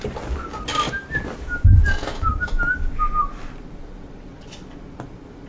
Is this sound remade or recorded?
recorded